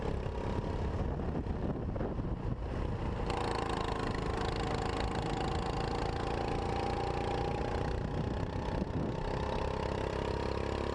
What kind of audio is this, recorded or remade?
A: recorded